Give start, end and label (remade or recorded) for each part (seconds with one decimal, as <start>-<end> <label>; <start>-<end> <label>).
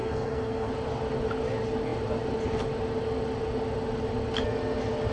0.0-0.7 remade; 0.7-5.1 recorded